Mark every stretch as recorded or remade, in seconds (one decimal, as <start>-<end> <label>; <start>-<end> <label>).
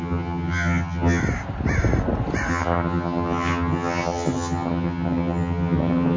0.0-1.2 remade; 1.2-2.5 recorded; 2.5-6.2 remade